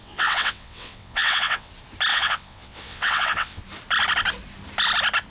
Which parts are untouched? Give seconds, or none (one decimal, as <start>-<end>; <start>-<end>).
1.7-2.1; 3.6-5.3